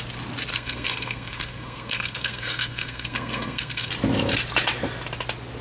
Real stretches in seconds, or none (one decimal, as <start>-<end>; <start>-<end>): 0.0-0.5; 3.9-5.6